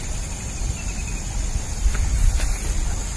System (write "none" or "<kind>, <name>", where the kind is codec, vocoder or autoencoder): none